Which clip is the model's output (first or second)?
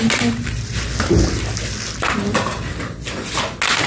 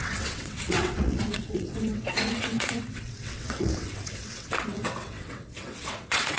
second